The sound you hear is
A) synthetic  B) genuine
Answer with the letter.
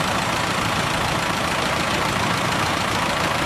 A